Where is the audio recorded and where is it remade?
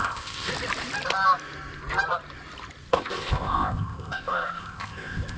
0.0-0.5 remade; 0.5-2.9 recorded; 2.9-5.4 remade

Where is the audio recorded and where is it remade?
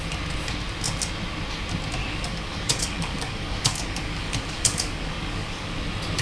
0.0-2.0 recorded; 2.0-5.7 remade; 5.7-6.2 recorded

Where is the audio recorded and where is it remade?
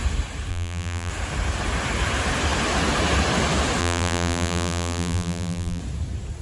0.0-0.5 recorded; 0.5-1.1 remade; 1.1-3.8 recorded; 3.8-5.8 remade; 5.8-6.4 recorded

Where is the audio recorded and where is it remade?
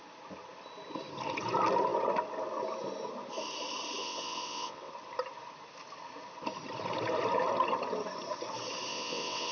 0.0-4.0 recorded; 4.0-4.9 remade; 4.9-8.9 recorded; 8.9-9.5 remade